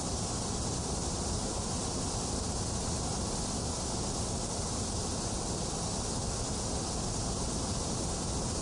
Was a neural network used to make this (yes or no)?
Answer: no